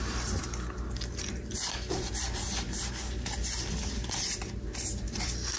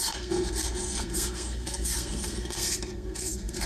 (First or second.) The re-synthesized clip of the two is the second